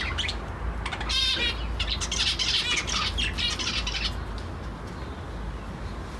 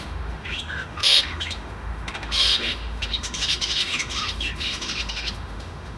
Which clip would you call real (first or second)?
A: first